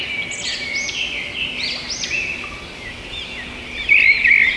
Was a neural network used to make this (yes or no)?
no